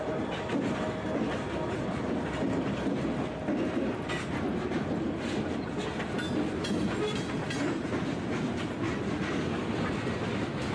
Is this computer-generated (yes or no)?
no